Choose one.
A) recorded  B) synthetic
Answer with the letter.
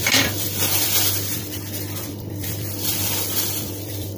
B